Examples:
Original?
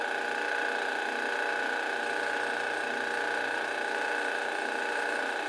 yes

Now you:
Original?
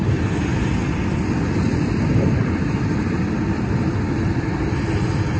yes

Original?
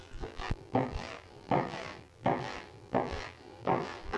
no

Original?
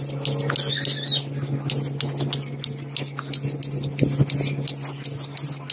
yes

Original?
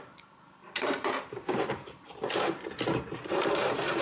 no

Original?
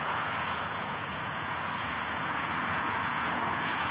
no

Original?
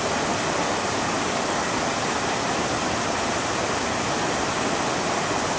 yes